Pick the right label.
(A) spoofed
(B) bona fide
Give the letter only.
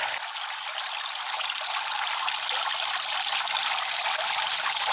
B